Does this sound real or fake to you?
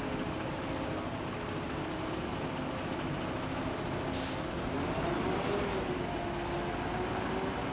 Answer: real